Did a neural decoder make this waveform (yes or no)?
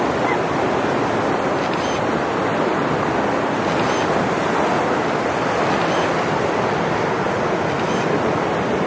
no